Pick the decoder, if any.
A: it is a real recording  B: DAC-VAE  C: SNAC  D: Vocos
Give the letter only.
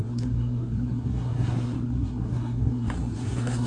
C